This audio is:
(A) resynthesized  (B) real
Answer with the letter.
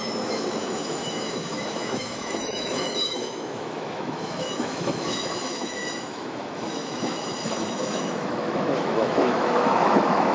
A